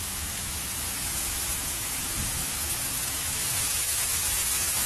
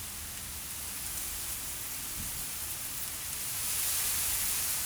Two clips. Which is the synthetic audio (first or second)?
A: first